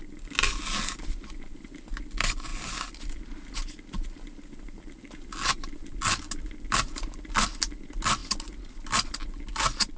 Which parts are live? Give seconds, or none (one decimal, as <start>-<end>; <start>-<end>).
0.0-10.0